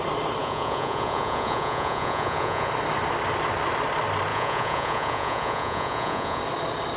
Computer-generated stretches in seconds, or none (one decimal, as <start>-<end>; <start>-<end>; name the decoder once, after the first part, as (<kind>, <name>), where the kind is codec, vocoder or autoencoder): 0.4-2.7 (vocoder, Vocos); 4.3-6.4